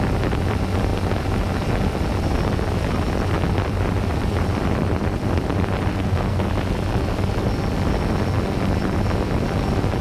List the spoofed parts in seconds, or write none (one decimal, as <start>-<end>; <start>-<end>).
5.9-6.5

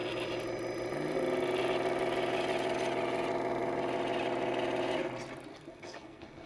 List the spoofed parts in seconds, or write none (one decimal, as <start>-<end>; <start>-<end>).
5.5-6.5

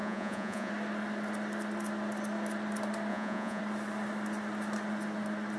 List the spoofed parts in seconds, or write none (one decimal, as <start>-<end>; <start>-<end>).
0.0-0.7; 3.1-3.6